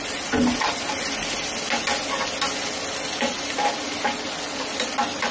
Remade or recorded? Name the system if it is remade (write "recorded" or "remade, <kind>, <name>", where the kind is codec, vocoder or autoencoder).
recorded